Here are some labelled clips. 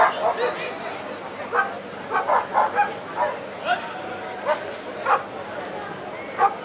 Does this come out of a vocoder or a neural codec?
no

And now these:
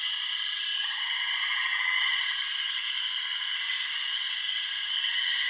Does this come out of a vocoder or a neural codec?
no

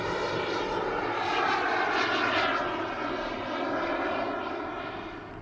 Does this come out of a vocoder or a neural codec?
no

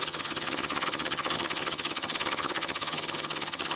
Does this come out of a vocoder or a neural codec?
yes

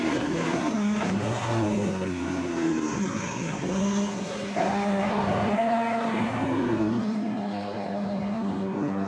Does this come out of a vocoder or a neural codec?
yes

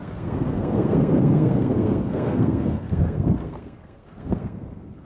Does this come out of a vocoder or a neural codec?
yes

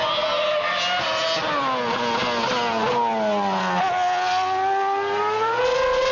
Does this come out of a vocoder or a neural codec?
no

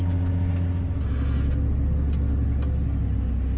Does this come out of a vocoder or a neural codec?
no